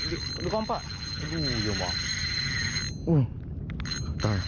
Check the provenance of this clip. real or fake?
real